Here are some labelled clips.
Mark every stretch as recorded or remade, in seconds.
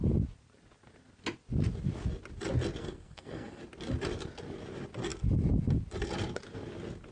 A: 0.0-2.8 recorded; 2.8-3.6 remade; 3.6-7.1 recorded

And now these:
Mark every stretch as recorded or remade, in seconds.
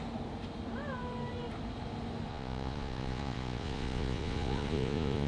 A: 0.0-2.3 recorded; 2.3-5.3 remade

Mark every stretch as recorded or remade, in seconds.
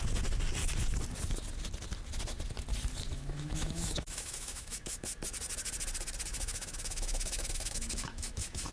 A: 0.0-3.1 recorded; 3.1-5.1 remade; 5.1-6.3 recorded; 6.3-8.7 remade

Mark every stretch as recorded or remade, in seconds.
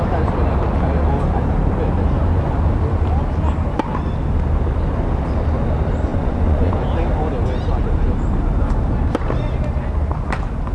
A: 0.0-6.1 recorded; 6.1-6.7 remade; 6.7-10.7 recorded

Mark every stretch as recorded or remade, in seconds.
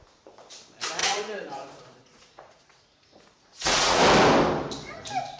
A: 0.0-1.0 recorded; 1.0-4.0 remade; 4.0-5.4 recorded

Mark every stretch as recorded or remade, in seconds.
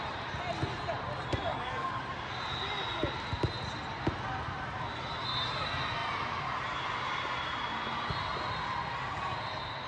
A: 0.0-1.5 recorded; 1.5-2.1 remade; 2.1-9.9 recorded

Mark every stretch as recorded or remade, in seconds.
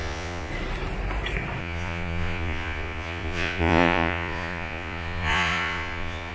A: 0.0-0.5 remade; 0.5-1.6 recorded; 1.6-6.3 remade